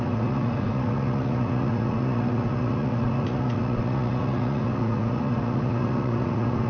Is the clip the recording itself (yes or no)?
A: no